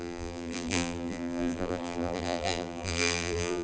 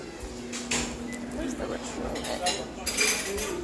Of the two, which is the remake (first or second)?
first